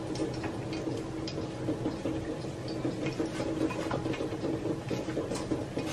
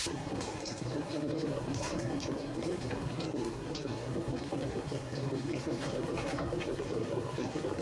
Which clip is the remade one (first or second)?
second